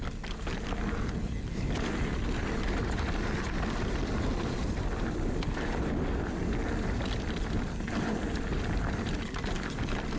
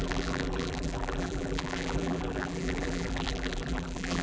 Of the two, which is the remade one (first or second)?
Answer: second